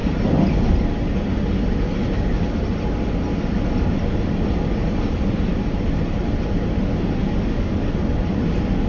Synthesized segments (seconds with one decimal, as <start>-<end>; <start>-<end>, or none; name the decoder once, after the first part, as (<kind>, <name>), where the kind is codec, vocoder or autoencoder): 7.2-7.9 (codec, DAC)